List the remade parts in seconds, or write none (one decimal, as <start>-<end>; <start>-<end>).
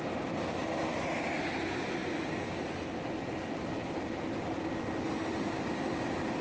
none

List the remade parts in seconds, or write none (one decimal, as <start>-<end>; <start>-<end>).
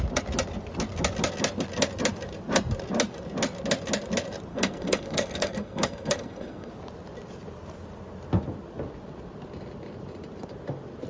4.5-6.7